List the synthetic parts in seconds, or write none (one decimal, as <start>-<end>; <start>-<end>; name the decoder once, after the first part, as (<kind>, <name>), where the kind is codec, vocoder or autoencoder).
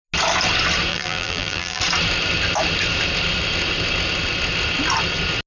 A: 0.9-1.8 (vocoder, BigVGAN v2)